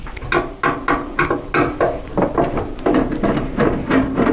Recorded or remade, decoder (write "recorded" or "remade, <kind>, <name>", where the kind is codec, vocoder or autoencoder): recorded